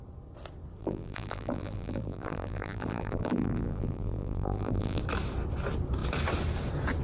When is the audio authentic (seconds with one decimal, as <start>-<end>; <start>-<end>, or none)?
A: 0.0-0.8; 5.0-7.0